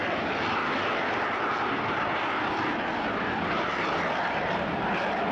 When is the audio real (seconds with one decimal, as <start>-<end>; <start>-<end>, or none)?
0.0-5.3